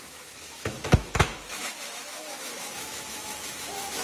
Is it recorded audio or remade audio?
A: remade